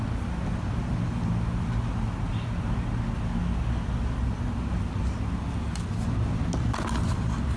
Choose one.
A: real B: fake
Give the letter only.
A